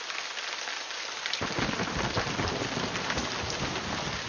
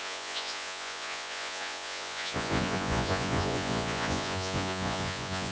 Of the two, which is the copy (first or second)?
second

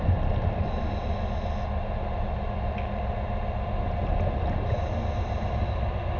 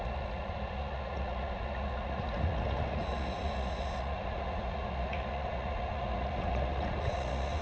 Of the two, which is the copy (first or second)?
second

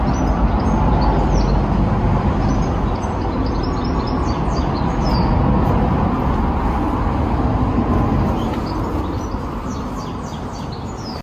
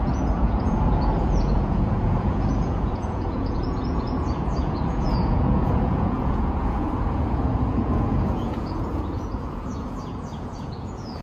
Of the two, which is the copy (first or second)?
second